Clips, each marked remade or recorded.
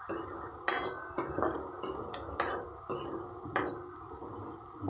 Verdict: recorded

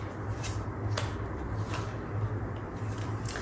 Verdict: remade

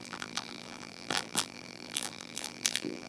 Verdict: remade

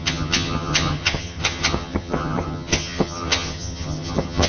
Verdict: remade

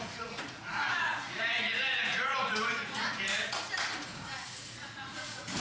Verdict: remade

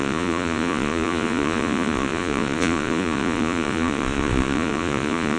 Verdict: remade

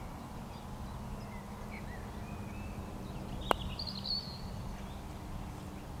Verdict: recorded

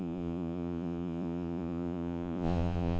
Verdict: remade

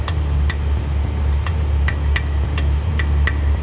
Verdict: recorded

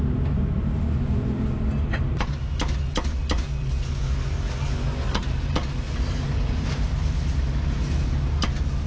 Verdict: recorded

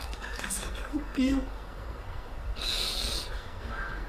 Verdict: remade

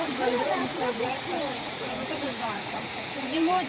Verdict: remade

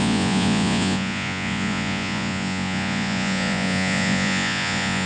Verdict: remade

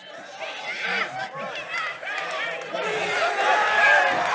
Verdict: remade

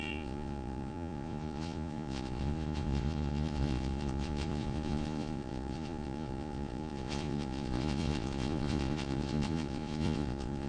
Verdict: remade